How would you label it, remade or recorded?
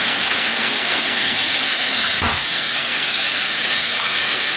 remade